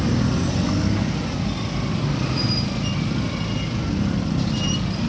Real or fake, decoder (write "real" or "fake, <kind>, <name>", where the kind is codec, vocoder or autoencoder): real